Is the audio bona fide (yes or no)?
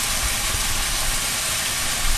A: yes